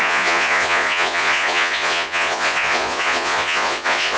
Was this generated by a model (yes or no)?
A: yes